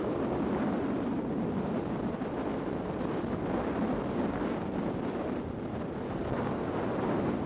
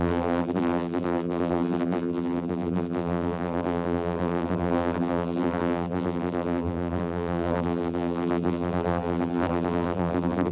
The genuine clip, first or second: first